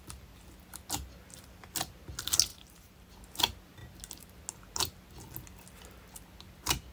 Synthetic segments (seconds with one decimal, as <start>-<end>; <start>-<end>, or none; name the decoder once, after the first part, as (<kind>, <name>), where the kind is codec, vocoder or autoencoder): 2.5-3.1 (vocoder, BigVGAN v2)